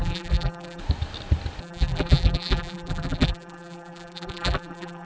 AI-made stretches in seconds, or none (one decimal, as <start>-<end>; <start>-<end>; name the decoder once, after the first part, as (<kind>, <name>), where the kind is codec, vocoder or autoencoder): 0.0-0.8 (vocoder, BigVGAN v2); 1.6-5.1